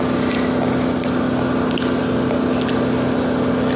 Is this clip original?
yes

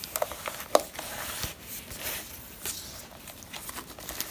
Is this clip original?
yes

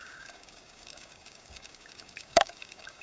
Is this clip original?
no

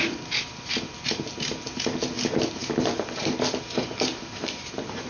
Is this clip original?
yes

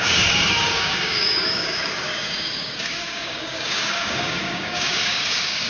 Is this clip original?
no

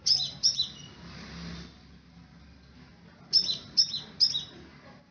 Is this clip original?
yes